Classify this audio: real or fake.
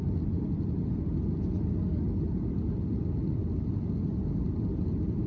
real